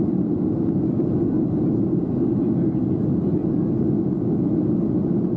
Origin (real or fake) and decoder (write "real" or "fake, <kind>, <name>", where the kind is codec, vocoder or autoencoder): real